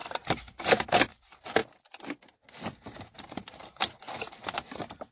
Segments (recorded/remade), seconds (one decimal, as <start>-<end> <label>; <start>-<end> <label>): 0.0-5.1 recorded